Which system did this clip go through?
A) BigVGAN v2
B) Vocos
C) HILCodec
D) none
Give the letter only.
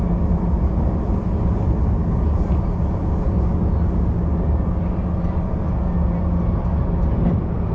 D